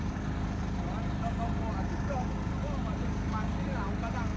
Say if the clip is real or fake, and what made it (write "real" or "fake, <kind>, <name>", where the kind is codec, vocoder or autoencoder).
real